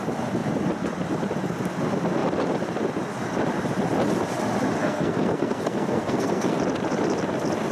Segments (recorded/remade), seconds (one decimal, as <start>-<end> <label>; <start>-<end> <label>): 0.0-4.8 recorded; 4.8-6.6 remade; 6.6-7.7 recorded